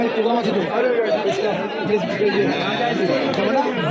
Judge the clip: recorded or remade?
remade